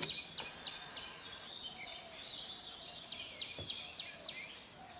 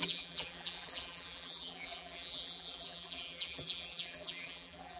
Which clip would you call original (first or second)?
first